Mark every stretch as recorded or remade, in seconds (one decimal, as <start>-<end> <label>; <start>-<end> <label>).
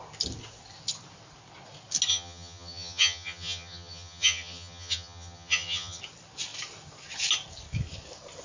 0.0-2.1 recorded; 2.1-6.0 remade; 6.0-8.4 recorded